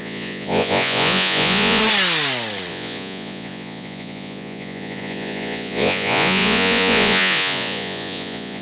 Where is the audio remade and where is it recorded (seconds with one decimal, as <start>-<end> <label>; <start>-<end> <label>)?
0.0-1.8 remade; 1.8-2.7 recorded; 2.7-8.6 remade